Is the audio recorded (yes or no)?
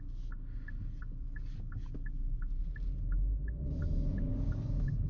yes